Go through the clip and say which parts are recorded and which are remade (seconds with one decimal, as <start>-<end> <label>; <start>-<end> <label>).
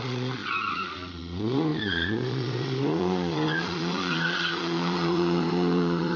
0.0-6.2 remade